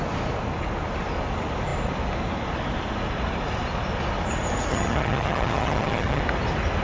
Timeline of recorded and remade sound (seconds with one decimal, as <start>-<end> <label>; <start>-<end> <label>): 0.0-4.7 recorded; 4.7-6.2 remade; 6.2-6.8 recorded

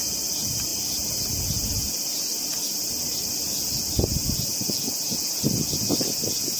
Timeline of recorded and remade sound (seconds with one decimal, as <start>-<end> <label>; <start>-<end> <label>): 0.0-6.6 recorded

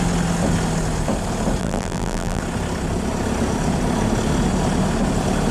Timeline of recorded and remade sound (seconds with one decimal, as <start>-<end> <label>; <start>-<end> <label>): 0.0-1.6 recorded; 1.6-2.4 remade; 2.4-5.5 recorded

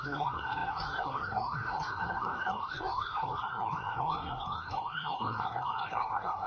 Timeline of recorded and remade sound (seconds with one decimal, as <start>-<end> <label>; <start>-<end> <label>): 0.0-6.5 remade

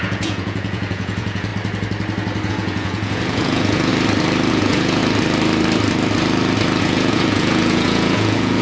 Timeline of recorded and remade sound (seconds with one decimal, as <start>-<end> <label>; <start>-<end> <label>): 0.0-1.5 remade; 1.5-2.5 recorded; 2.5-3.9 remade; 3.9-4.5 recorded; 4.5-5.0 remade; 5.0-6.8 recorded; 6.8-8.6 remade

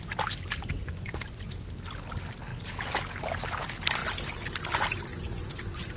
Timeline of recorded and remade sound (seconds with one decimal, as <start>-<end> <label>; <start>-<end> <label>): 0.0-0.8 recorded; 0.8-1.5 remade; 1.5-5.1 recorded; 5.1-6.0 remade

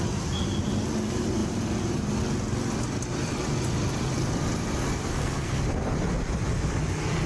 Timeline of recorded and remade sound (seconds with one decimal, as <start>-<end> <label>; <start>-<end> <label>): 0.0-5.1 recorded; 5.1-5.6 remade; 5.6-7.3 recorded

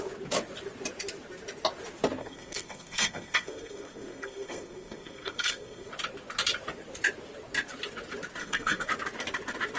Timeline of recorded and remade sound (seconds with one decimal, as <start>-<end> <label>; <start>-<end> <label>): 0.0-2.2 recorded; 2.2-5.9 remade; 5.9-8.4 recorded; 8.4-8.9 remade; 8.9-9.8 recorded